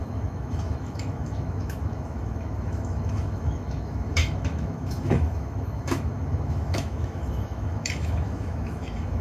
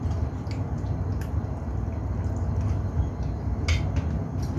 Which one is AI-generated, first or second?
first